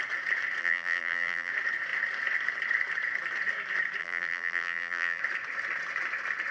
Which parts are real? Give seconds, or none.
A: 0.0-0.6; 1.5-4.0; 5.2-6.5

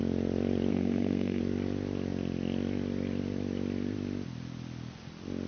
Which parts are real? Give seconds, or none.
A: 0.0-0.7; 1.4-5.5

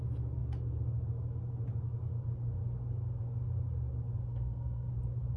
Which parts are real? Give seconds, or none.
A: 0.0-4.3; 4.9-5.4